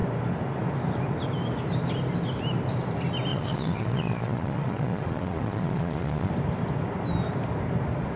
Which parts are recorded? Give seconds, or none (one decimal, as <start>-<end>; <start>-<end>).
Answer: 0.0-3.3; 6.3-8.2